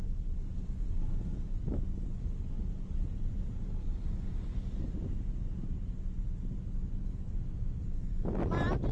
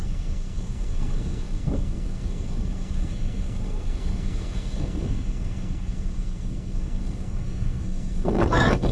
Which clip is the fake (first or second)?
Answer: second